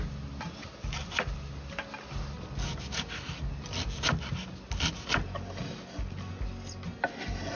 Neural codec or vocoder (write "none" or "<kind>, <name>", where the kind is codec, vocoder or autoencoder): none